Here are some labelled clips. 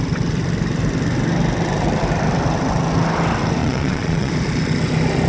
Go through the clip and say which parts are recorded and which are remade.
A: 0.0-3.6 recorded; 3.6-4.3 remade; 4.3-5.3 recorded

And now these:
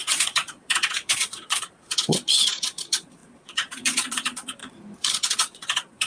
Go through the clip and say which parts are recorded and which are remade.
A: 0.0-4.6 remade; 4.6-5.1 recorded; 5.1-6.1 remade